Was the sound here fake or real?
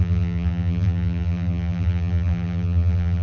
fake